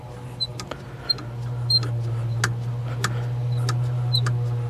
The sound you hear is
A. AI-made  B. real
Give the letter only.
B